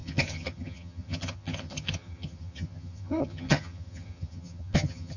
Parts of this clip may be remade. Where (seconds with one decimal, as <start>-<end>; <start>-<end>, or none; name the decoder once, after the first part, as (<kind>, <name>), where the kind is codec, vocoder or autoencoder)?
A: 0.0-5.2 (vocoder, HiFi-GAN)